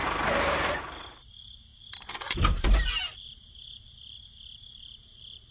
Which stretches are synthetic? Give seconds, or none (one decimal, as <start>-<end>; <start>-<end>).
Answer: 0.7-1.7; 3.0-5.5